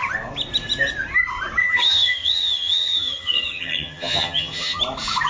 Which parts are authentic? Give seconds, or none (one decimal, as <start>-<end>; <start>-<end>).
0.0-1.6; 4.8-5.3